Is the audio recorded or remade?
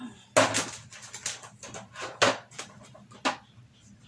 recorded